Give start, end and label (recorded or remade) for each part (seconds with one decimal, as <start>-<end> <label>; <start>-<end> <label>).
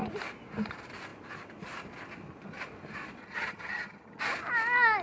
0.0-3.2 recorded; 3.2-4.2 remade; 4.2-5.0 recorded